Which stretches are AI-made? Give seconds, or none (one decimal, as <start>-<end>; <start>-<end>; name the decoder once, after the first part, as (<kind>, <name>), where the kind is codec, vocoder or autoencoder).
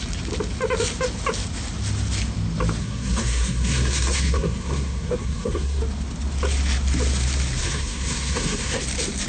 2.8-5.8 (codec, SNAC); 7.6-8.8